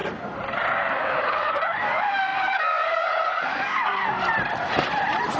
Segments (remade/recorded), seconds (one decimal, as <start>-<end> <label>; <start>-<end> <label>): 0.0-0.9 recorded; 0.9-4.0 remade; 4.0-5.4 recorded